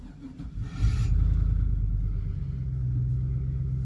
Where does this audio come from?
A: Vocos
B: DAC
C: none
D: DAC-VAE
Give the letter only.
C